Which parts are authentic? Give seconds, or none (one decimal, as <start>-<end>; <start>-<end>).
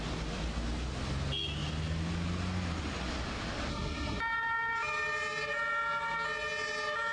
0.0-3.7; 4.2-7.1